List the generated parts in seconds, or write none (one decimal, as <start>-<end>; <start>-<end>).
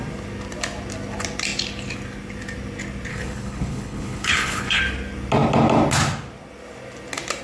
3.1-4.8